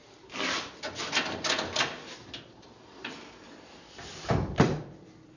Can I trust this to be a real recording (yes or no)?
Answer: no